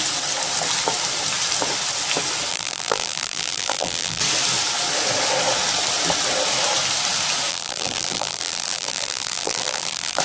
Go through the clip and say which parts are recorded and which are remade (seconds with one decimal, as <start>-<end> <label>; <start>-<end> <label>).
0.0-2.5 recorded; 2.5-4.2 remade; 4.2-7.5 recorded; 7.5-10.2 remade